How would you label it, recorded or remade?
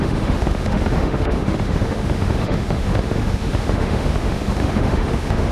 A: remade